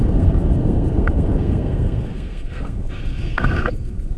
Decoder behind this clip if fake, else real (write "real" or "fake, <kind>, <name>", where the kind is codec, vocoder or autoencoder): fake, codec, SNAC